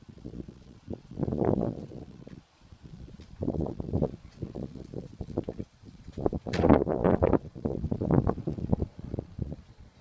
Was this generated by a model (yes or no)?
yes